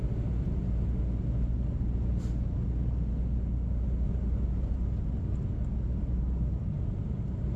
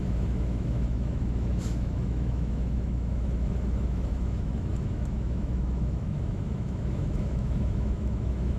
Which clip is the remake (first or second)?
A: second